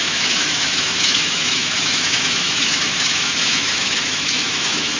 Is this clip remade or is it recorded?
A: remade